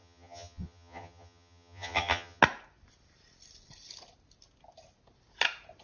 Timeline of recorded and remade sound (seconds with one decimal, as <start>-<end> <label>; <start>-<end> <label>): 0.0-2.4 remade; 2.4-5.8 recorded